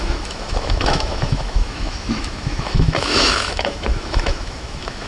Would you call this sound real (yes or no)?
no